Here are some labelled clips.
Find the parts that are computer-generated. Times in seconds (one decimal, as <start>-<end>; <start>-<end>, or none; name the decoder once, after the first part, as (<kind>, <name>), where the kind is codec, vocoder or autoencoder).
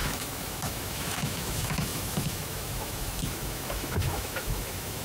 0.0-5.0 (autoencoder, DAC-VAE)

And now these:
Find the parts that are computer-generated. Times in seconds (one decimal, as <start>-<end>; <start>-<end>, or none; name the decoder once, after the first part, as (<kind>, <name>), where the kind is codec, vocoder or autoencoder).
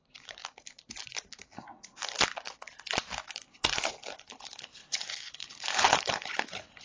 0.0-0.4 (codec, HILCodec); 3.9-6.8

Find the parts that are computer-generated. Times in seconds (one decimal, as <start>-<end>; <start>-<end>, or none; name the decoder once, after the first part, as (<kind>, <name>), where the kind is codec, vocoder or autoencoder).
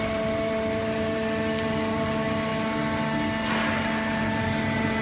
0.0-2.5 (vocoder, BigVGAN v2); 4.2-5.0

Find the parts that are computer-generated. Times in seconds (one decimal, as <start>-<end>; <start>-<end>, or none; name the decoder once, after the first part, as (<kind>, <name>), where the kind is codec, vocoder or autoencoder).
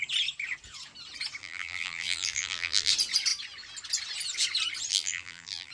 1.4-2.9 (vocoder, BigVGAN v2); 4.9-5.7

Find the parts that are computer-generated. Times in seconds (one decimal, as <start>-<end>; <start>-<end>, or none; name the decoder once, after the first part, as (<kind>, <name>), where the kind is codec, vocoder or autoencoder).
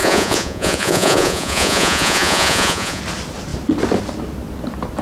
0.0-3.0 (vocoder, Vocos)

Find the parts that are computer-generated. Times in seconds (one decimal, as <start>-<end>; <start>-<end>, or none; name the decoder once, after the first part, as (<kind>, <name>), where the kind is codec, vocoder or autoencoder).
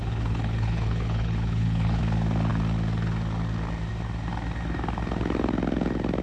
0.0-2.0 (codec, HILCodec)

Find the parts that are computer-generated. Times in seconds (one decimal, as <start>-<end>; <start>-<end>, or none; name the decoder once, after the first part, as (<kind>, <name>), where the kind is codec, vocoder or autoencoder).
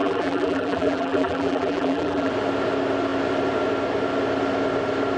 0.0-2.3 (vocoder, BigVGAN v2)